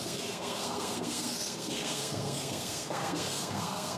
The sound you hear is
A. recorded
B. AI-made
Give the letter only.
B